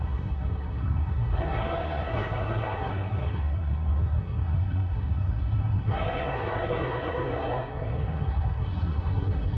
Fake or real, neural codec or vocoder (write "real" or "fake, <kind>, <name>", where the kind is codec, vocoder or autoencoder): fake, codec, SNAC